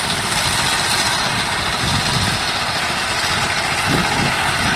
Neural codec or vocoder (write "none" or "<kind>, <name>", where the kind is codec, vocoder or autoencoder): none